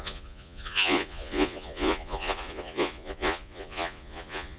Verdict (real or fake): fake